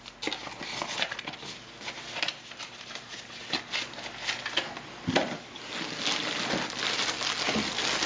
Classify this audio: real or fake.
real